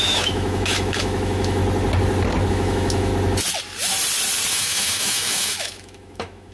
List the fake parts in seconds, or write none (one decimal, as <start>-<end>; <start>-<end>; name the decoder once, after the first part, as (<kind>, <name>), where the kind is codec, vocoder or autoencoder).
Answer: 0.0-1.6 (autoencoder, DAC-VAE); 2.5-3.1; 4.5-6.5